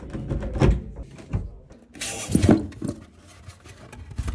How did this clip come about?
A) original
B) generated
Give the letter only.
A